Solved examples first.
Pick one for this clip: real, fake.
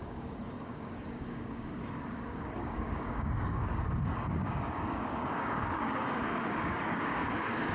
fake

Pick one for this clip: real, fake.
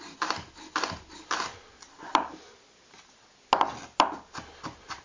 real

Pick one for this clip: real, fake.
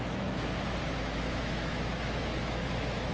fake